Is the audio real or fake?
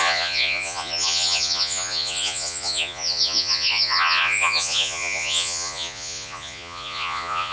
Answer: fake